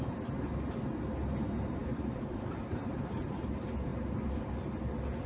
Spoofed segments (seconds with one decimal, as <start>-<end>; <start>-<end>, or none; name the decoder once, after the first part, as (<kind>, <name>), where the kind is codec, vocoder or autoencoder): 1.8-3.5 (vocoder, BigVGAN v2)